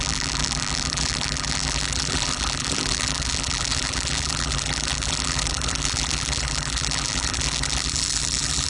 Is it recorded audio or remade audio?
remade